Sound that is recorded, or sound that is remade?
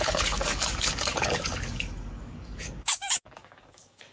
remade